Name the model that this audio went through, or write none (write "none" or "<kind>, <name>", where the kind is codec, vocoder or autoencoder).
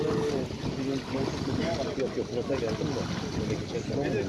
none